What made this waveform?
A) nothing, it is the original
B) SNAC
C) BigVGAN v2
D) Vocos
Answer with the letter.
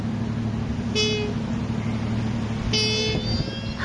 A